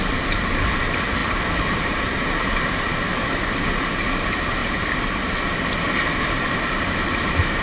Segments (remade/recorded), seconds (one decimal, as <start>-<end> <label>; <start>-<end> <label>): 0.0-4.6 remade; 4.6-6.3 recorded; 6.3-7.6 remade

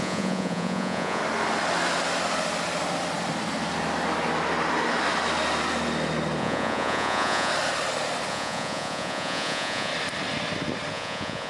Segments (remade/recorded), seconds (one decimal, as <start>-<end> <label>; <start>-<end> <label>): 0.0-1.2 remade; 1.2-6.4 recorded; 6.4-7.5 remade; 7.5-8.3 recorded; 8.3-9.9 remade; 9.9-10.9 recorded; 10.9-11.5 remade